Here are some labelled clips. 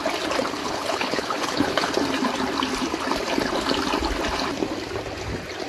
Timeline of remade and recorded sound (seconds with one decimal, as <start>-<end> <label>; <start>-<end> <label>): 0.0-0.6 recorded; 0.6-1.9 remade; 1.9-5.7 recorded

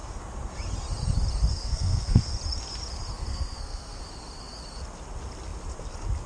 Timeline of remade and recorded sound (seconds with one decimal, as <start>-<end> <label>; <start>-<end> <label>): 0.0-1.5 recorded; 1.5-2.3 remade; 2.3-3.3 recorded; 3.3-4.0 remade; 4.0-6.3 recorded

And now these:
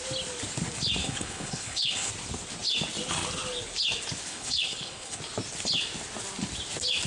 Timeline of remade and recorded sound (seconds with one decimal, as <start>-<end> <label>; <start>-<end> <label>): 0.0-1.0 recorded; 1.0-2.1 remade; 2.1-4.3 recorded; 4.3-5.2 remade; 5.2-7.1 recorded

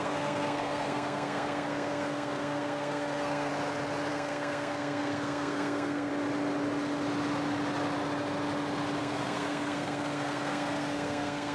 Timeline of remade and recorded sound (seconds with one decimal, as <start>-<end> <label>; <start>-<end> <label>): 0.0-3.5 remade; 3.5-4.1 recorded; 4.1-6.1 remade; 6.1-9.0 recorded; 9.0-11.5 remade

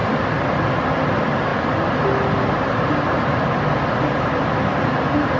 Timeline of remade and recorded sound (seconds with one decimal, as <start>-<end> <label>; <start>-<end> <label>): 0.0-5.4 recorded

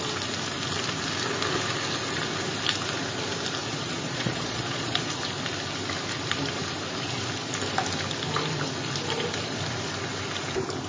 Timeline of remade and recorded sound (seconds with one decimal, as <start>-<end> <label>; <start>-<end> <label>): 0.0-3.6 recorded; 3.6-5.1 remade; 5.1-10.9 recorded

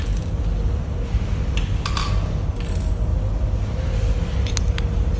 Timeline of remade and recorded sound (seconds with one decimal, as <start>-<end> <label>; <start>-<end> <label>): 0.0-5.2 recorded